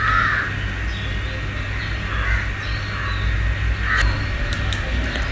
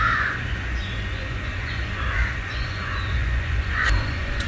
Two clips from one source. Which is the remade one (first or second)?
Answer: second